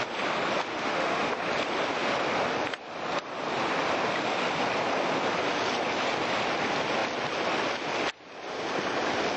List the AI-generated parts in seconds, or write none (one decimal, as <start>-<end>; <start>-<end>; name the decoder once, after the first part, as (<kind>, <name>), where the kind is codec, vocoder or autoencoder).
0.7-1.3 (autoencoder, DAC-VAE)